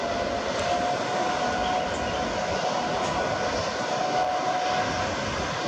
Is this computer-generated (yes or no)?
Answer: no